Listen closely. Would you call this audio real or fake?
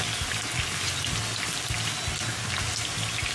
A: real